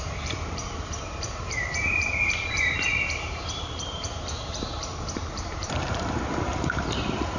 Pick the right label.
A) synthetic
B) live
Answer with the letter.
A